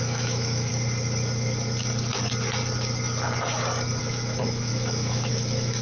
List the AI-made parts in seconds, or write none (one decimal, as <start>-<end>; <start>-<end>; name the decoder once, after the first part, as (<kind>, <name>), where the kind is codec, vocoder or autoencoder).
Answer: 0.0-0.7 (autoencoder, DAC-VAE); 4.0-5.8